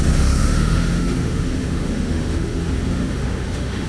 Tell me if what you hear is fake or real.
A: fake